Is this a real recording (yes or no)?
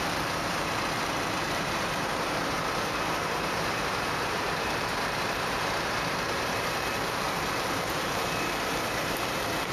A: no